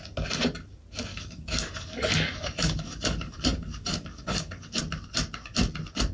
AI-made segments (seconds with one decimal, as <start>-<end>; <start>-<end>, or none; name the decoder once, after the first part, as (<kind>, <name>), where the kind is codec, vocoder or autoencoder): 1.1-4.8 (codec, DAC)